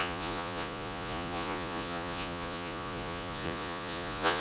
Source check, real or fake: fake